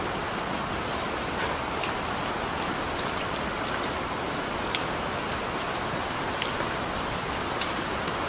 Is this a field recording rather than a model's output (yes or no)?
yes